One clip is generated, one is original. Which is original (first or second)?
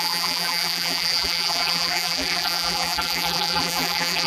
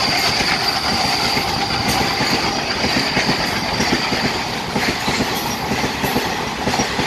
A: second